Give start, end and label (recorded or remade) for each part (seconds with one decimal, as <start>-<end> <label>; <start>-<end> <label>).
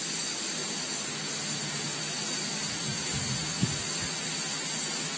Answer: 0.0-5.2 recorded